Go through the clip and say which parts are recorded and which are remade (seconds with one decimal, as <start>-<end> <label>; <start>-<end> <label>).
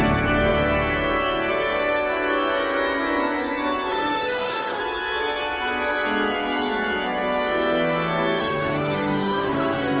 0.0-3.9 recorded; 3.9-4.8 remade; 4.8-8.4 recorded; 8.4-10.0 remade